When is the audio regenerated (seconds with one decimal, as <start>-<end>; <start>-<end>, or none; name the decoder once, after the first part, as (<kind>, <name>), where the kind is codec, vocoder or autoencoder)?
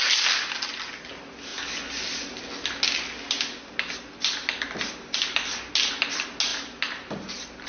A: none